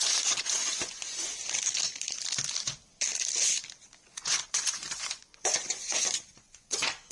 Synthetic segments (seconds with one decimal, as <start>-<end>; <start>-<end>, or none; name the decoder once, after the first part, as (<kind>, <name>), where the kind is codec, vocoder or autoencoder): 0.0-1.3 (vocoder, Vocos); 4.0-7.1